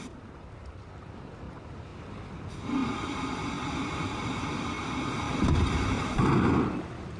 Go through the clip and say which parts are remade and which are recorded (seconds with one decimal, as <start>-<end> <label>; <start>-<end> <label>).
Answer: 0.0-5.3 recorded; 5.3-6.1 remade; 6.1-7.2 recorded